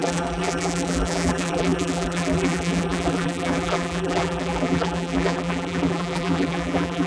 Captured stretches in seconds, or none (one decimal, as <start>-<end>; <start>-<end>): none